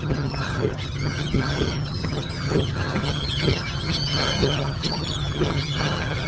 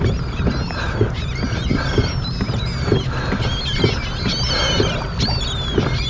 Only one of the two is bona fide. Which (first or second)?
second